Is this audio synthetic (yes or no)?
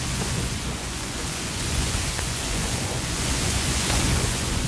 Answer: yes